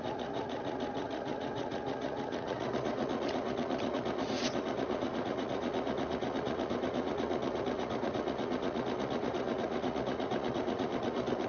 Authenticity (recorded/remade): remade